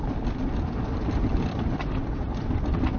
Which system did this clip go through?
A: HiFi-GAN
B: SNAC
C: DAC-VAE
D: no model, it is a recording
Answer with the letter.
D